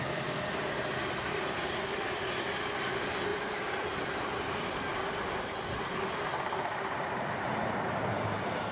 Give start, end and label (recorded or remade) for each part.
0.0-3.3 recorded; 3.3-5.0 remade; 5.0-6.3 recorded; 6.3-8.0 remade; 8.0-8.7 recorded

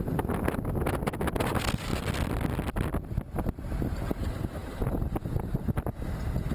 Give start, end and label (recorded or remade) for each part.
0.0-4.6 recorded; 4.6-5.2 remade; 5.2-6.5 recorded

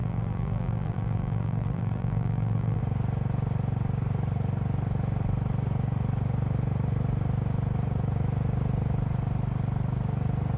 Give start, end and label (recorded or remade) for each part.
0.0-2.8 remade; 2.8-10.6 recorded